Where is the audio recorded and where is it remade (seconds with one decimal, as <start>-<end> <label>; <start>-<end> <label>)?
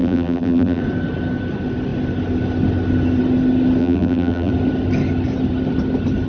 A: 0.0-0.8 remade; 0.8-3.8 recorded; 3.8-4.5 remade; 4.5-6.3 recorded